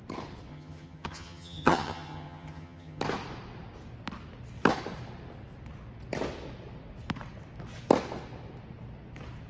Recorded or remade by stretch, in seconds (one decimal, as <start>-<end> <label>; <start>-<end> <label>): 0.0-0.5 recorded; 0.5-3.0 remade; 3.0-9.5 recorded